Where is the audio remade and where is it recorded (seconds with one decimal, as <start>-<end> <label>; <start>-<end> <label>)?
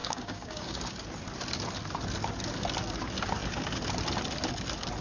0.0-0.8 remade; 0.8-5.0 recorded